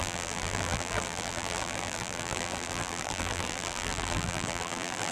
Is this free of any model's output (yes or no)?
no